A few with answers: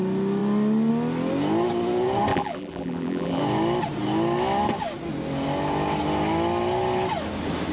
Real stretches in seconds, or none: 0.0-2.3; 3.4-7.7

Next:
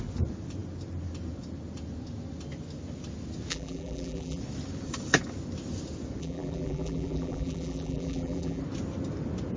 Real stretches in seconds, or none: 0.0-3.5; 4.4-6.2; 8.6-9.6

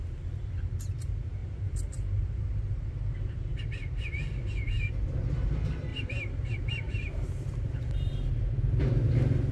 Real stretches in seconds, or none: 0.0-1.4; 3.6-5.9; 8.3-9.5

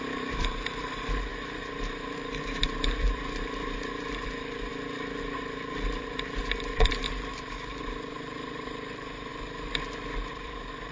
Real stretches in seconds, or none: 4.7-5.2; 9.3-10.3